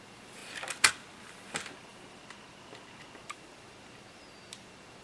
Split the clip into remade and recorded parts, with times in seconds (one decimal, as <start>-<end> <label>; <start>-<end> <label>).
0.0-5.0 recorded